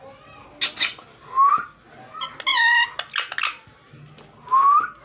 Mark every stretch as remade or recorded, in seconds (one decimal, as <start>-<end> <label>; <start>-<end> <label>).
0.0-5.0 recorded

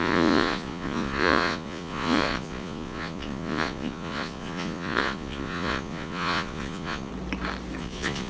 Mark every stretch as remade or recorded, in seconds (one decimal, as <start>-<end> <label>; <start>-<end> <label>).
0.0-7.1 remade; 7.1-7.8 recorded; 7.8-8.3 remade

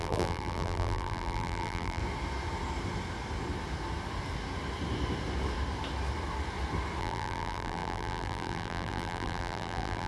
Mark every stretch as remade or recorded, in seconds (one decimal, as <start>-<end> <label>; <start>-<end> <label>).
0.0-2.0 remade; 2.0-7.0 recorded; 7.0-10.1 remade

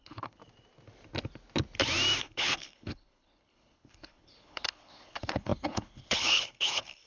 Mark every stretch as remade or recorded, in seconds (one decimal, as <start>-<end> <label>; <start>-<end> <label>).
0.0-0.4 remade; 0.4-2.2 recorded; 2.2-7.1 remade

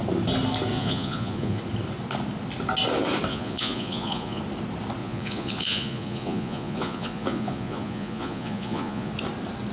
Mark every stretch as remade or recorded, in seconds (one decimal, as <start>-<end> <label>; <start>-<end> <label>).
0.0-0.7 recorded; 0.7-1.6 remade; 1.6-3.3 recorded; 3.3-4.4 remade; 4.4-5.0 recorded; 5.0-9.1 remade; 9.1-9.7 recorded

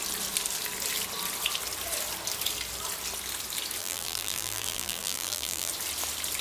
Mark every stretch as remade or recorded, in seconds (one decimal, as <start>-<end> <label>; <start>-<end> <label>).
0.0-3.8 recorded; 3.8-5.7 remade; 5.7-6.4 recorded

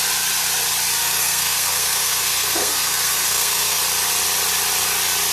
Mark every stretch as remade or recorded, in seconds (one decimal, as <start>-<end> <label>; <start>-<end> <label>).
0.0-1.0 recorded; 1.0-3.8 remade; 3.8-5.3 recorded